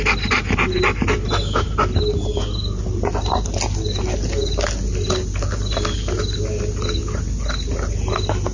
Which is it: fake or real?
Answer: real